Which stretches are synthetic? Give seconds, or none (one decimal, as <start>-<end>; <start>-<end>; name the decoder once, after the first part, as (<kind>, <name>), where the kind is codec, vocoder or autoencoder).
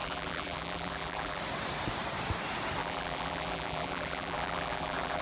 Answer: 0.0-1.4 (vocoder, BigVGAN v2); 2.8-5.2